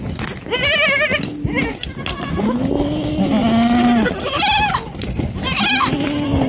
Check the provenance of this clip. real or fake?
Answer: real